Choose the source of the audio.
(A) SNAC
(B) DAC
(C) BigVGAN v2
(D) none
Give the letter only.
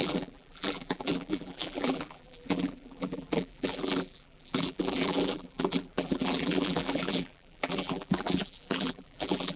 C